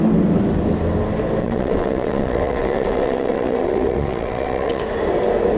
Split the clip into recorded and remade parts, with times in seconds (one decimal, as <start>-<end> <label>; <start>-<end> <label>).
0.0-1.4 recorded; 1.4-4.8 remade; 4.8-5.6 recorded